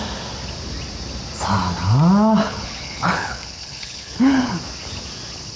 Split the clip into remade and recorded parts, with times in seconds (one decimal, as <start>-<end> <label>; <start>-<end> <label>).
0.0-2.4 recorded; 2.4-4.5 remade; 4.5-5.6 recorded